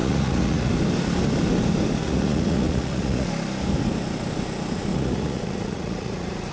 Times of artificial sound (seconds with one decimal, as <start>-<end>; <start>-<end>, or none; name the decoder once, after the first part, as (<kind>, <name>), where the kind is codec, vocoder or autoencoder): 0.0-0.7 (vocoder, Vocos); 2.0-3.3; 4.9-6.5